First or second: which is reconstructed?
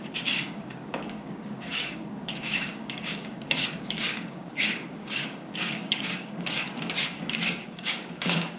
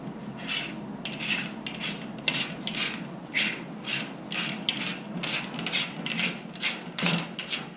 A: first